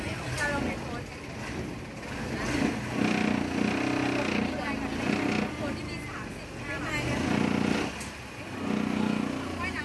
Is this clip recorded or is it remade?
recorded